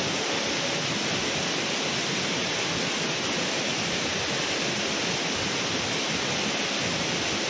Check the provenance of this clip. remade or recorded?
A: recorded